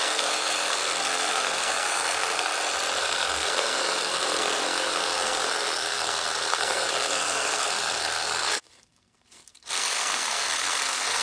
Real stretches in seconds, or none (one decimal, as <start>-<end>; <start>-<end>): 2.5-3.0